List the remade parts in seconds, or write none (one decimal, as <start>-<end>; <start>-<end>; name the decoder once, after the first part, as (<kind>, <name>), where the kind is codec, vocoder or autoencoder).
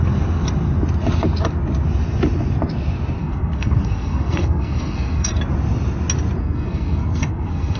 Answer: 3.2-5.4 (codec, SNAC); 6.4-7.8